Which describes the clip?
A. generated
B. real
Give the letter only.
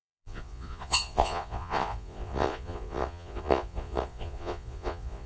A